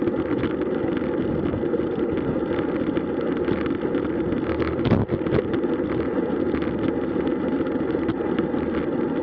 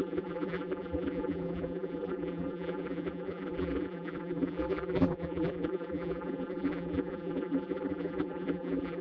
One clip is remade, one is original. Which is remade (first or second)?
second